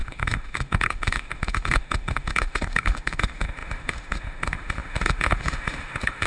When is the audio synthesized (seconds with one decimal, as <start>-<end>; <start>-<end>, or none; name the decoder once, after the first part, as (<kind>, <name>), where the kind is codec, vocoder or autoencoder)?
0.0-6.3 (autoencoder, DAC-VAE)